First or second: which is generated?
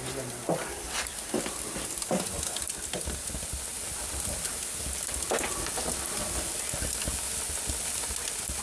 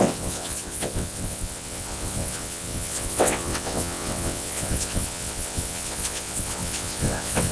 second